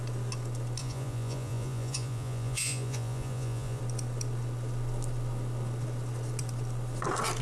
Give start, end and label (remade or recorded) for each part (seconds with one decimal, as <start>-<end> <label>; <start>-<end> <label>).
0.0-0.8 recorded; 0.8-3.8 remade; 3.8-7.4 recorded